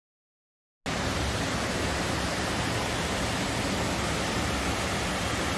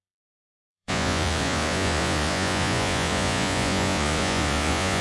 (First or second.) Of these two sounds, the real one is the first